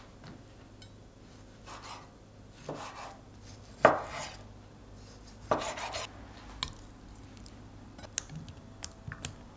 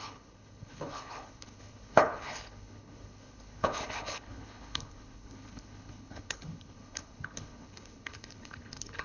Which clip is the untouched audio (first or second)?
first